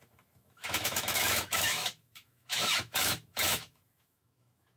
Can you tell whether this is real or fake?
fake